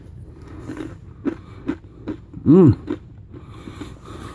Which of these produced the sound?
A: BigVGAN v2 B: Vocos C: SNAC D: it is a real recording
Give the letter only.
D